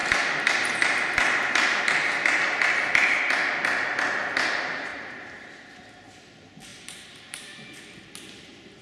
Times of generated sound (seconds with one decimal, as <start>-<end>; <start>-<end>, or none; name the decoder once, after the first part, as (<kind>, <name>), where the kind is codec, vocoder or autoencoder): 0.0-1.8 (vocoder, BigVGAN v2); 4.9-5.5; 6.7-7.8